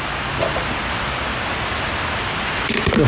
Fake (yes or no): no